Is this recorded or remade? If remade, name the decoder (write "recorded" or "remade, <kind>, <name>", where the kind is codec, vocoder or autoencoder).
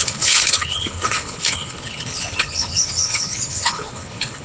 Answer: remade, codec, HILCodec